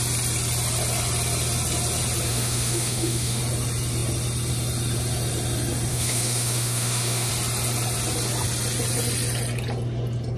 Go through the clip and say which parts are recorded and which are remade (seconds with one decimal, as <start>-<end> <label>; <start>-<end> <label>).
0.0-2.3 recorded; 2.3-3.4 remade; 3.4-5.9 recorded; 5.9-7.3 remade; 7.3-10.4 recorded